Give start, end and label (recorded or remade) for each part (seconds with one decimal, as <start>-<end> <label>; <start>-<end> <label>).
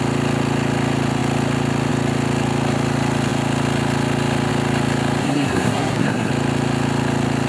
0.0-5.2 recorded; 5.2-6.3 remade; 6.3-7.5 recorded